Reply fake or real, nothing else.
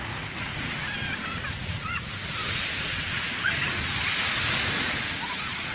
fake